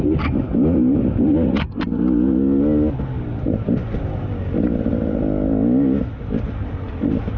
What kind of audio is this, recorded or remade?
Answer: recorded